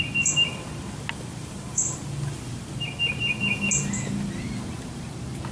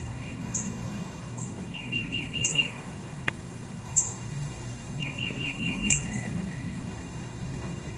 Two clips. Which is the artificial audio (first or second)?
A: second